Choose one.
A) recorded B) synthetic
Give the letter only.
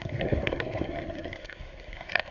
B